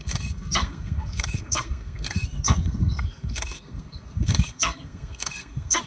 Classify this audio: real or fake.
fake